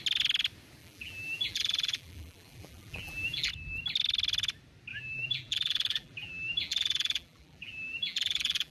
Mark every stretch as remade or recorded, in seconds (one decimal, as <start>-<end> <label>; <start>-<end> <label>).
0.0-0.8 recorded; 0.8-3.5 remade; 3.5-4.9 recorded; 4.9-8.7 remade